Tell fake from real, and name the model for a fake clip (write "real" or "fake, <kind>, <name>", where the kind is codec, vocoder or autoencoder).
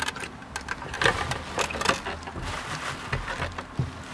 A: real